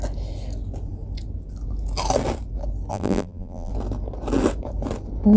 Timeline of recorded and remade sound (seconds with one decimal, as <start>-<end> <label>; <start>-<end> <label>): 0.0-2.9 recorded; 2.9-3.7 remade; 3.7-5.4 recorded